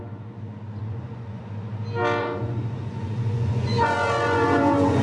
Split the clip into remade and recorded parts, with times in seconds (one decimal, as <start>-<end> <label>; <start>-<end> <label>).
0.0-0.8 recorded; 0.8-1.4 remade; 1.4-2.2 recorded; 2.2-5.0 remade